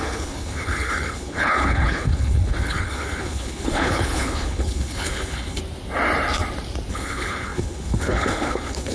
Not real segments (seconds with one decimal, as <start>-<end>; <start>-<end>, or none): 0.0-5.6; 6.9-8.9